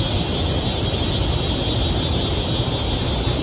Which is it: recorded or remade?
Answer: recorded